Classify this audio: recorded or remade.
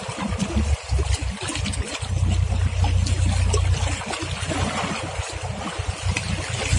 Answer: recorded